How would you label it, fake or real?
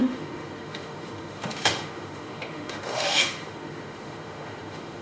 fake